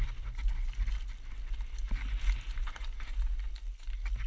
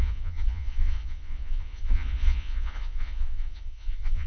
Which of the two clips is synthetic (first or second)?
second